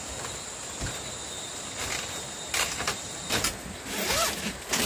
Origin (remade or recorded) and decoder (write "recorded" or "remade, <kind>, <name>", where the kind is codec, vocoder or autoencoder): remade, vocoder, BigVGAN v2